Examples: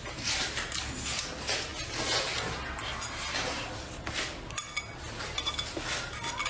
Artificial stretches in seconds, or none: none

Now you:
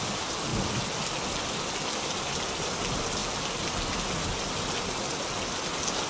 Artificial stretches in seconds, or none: none

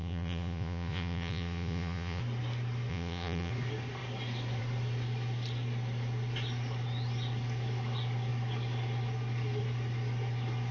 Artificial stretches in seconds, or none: 0.0-2.2 (vocoder, Vocos); 2.9-3.5